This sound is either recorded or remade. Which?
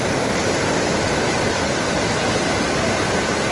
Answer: recorded